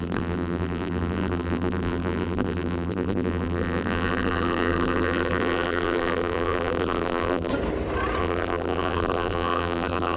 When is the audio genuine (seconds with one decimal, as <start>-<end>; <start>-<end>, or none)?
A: 7.5-8.2